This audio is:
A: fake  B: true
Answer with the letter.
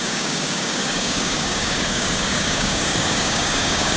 A